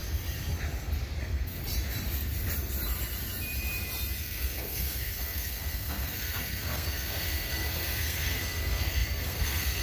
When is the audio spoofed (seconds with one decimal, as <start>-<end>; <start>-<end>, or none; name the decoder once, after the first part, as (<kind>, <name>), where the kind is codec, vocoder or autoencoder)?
1.2-1.6 (codec, SNAC); 4.2-9.8